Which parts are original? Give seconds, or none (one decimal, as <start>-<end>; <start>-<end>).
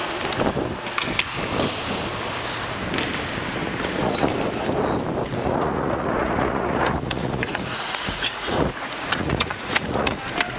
0.0-3.6; 4.3-5.4; 10.2-10.6